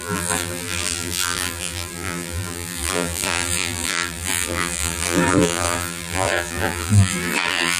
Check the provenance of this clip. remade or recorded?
remade